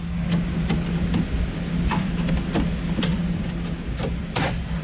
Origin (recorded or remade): recorded